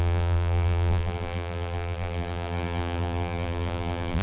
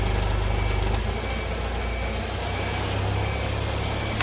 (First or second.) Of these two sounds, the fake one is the first